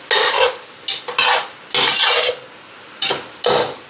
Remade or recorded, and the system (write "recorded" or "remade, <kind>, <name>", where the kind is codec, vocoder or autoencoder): recorded